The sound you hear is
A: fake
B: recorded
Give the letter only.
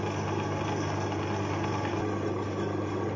B